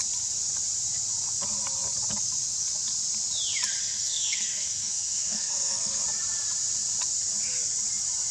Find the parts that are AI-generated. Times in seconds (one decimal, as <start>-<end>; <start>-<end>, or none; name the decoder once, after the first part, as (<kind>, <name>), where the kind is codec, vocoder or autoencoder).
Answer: 3.8-6.0 (codec, SNAC)